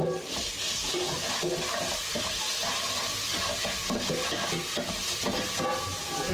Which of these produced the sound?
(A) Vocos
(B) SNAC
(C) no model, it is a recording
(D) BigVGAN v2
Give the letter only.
C